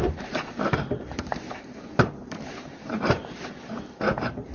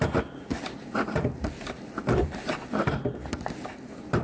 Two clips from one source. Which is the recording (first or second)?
second